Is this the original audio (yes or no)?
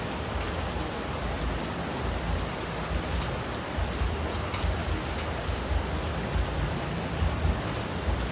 yes